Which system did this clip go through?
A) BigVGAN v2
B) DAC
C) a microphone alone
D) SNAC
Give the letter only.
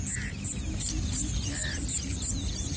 C